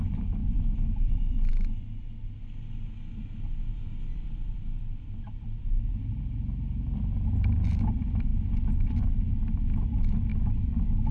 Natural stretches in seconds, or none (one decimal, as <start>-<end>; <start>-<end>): 0.0-0.4; 1.5-3.7; 5.6-11.1